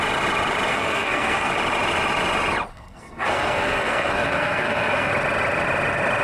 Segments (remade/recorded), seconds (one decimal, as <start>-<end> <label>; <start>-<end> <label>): 0.0-0.7 recorded; 0.7-1.5 remade; 1.5-2.7 recorded; 2.7-5.1 remade; 5.1-6.2 recorded